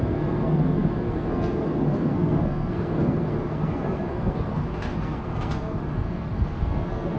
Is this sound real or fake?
fake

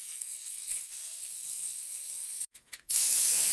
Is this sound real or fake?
fake